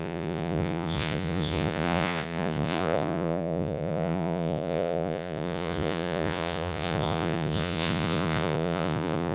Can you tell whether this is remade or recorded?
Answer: remade